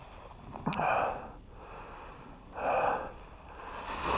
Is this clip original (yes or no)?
yes